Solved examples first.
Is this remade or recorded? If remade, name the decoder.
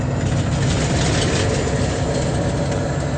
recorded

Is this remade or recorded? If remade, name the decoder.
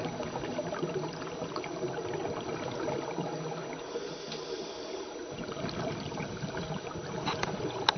remade, vocoder, BigVGAN v2